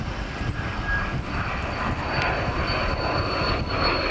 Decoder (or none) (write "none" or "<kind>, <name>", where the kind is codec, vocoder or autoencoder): none